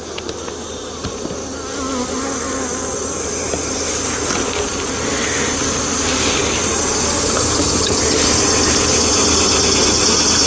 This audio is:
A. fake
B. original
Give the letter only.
B